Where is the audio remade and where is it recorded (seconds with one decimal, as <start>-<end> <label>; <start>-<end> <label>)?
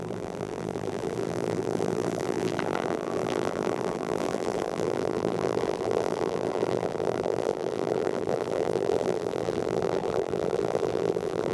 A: 0.0-11.5 remade